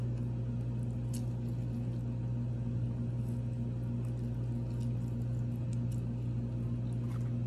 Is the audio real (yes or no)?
yes